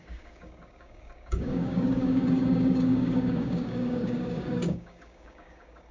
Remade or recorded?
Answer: remade